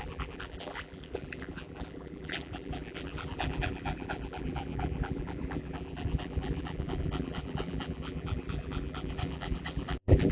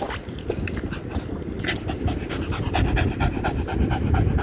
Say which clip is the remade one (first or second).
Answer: first